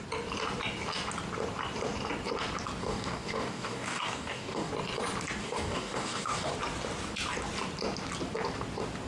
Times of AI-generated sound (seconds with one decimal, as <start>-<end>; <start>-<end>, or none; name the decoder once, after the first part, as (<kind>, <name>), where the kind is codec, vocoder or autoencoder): 2.8-4.7 (codec, DAC); 5.4-6.5